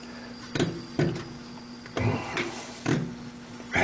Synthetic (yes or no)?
no